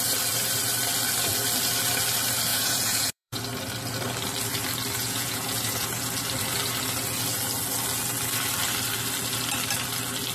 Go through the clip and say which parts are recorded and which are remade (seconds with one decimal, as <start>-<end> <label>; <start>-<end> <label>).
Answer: 0.0-2.5 recorded; 2.5-3.4 remade; 3.4-5.0 recorded; 5.0-5.9 remade; 5.9-10.3 recorded